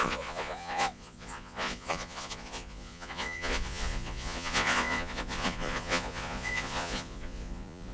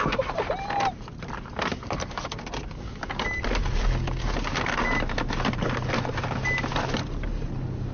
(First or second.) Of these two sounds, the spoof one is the first